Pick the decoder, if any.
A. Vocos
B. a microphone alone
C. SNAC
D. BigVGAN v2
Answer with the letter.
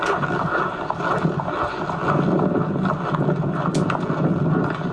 B